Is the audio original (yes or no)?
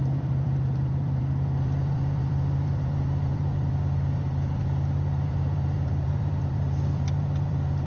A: no